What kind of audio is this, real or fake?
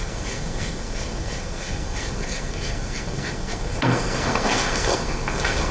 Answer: fake